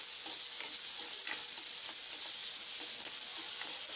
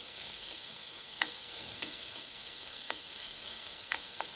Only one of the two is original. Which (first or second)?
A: first